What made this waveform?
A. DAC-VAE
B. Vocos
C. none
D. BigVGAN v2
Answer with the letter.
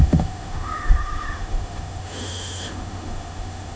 A